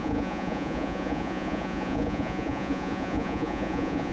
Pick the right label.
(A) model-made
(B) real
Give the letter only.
A